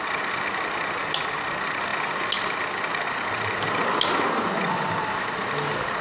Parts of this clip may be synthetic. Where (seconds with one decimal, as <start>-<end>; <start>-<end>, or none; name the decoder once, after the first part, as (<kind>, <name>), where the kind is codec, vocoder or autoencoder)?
none